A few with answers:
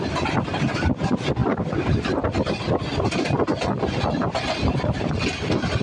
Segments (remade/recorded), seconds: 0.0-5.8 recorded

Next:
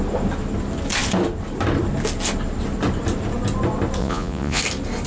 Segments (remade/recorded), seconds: 0.0-4.0 recorded; 4.0-4.6 remade; 4.6-5.1 recorded

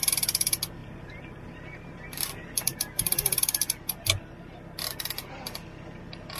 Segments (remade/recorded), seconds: 0.0-0.8 recorded; 0.8-2.5 remade; 2.5-6.4 recorded

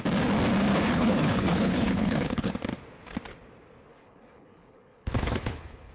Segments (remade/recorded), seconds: 0.0-0.7 recorded; 0.7-2.5 remade; 2.5-3.9 recorded; 3.9-5.9 remade